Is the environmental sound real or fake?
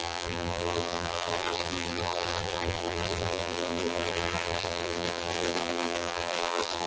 fake